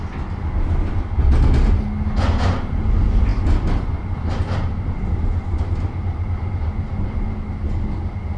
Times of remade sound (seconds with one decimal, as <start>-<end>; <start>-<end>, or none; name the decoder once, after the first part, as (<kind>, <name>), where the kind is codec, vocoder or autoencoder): none